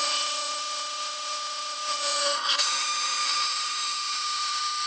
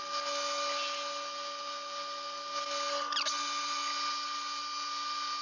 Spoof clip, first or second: first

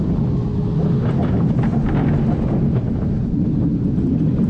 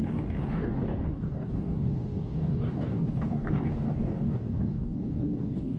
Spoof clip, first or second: second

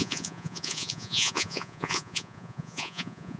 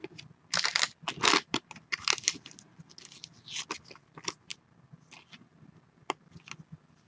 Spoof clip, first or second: first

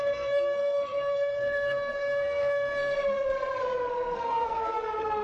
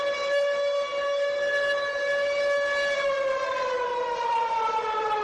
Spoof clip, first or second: first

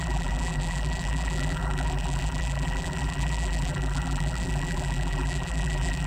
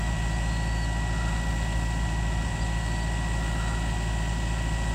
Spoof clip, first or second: first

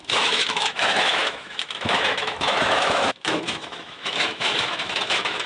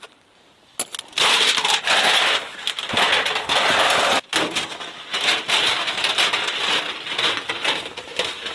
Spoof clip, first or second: first